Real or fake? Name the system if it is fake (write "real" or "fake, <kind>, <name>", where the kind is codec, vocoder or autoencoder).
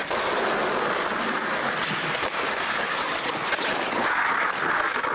real